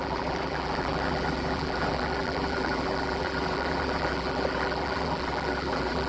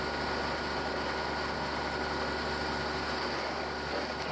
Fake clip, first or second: first